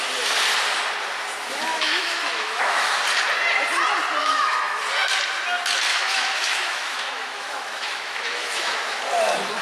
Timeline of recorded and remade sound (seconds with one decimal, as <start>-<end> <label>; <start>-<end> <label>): 0.0-1.7 recorded; 1.7-2.9 remade; 2.9-4.2 recorded; 4.2-4.8 remade; 4.8-5.9 recorded; 5.9-9.0 remade; 9.0-9.6 recorded